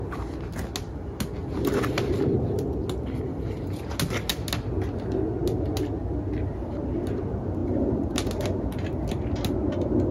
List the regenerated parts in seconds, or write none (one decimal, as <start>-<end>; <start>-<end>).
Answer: 1.4-2.8